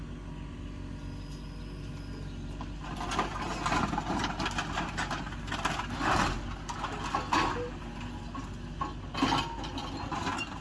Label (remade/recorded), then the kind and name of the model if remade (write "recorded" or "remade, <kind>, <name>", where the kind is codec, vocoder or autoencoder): recorded